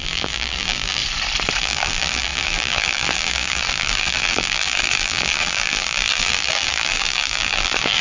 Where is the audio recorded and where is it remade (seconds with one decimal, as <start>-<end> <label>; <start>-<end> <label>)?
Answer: 0.0-1.0 remade; 1.0-1.6 recorded; 1.6-8.0 remade